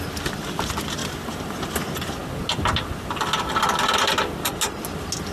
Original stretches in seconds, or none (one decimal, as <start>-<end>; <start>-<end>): 0.0-1.0; 1.8-5.3